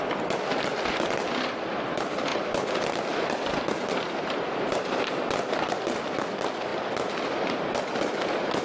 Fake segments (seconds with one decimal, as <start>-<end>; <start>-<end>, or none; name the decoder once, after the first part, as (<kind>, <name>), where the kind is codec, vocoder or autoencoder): 0.0-8.6 (vocoder, BigVGAN v2)